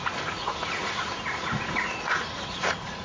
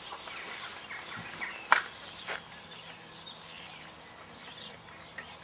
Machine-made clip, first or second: first